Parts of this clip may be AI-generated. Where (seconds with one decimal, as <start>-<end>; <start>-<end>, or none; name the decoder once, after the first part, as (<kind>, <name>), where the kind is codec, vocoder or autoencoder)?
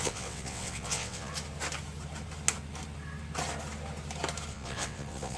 0.0-1.3 (vocoder, WaveNeXt); 4.5-5.4